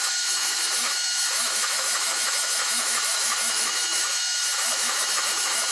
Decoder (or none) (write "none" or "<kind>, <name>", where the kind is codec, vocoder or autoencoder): autoencoder, DAC-VAE